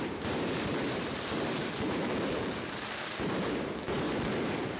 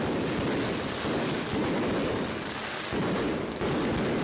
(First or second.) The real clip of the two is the second